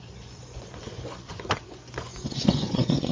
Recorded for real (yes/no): no